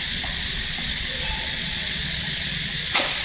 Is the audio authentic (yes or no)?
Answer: no